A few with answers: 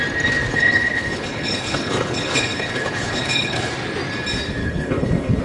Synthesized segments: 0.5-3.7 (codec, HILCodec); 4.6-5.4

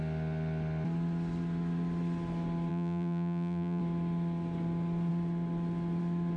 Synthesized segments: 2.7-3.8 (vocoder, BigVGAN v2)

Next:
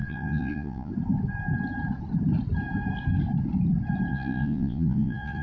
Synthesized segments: 0.0-0.9 (vocoder, Vocos); 4.1-5.4